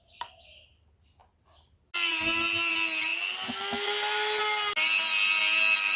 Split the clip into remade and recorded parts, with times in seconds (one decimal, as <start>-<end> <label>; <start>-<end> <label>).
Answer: 0.0-6.0 recorded